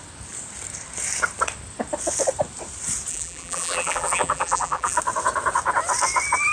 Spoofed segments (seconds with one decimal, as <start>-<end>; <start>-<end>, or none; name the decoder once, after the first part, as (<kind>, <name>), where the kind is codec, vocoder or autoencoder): 3.1-5.0 (vocoder, BigVGAN v2)